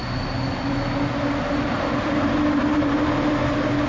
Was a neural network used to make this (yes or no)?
no